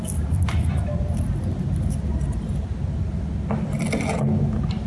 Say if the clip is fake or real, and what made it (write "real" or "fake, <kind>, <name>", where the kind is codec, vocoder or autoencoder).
real